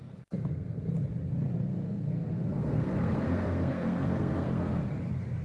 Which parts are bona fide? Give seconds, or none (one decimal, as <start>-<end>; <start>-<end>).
0.9-1.7; 4.9-5.4